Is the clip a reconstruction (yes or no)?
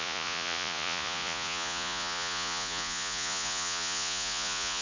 yes